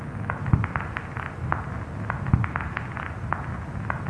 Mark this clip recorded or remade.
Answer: recorded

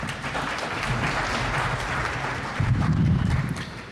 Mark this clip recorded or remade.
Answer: remade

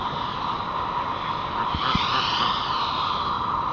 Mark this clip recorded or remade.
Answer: recorded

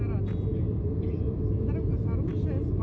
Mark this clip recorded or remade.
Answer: recorded